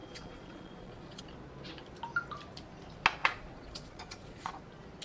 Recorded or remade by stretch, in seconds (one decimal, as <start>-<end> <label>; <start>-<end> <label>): 0.0-1.2 remade; 1.2-3.2 recorded; 3.2-4.5 remade; 4.5-5.0 recorded